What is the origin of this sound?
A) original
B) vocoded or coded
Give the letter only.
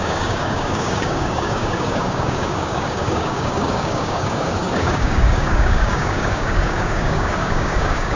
B